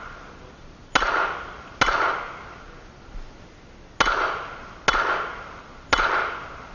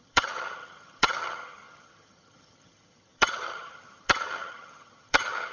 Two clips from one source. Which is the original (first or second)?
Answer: first